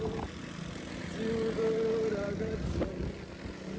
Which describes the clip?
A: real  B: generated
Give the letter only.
A